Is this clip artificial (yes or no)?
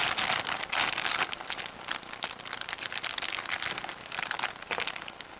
no